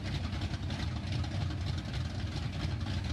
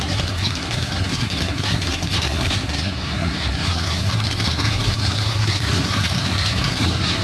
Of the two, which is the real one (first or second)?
first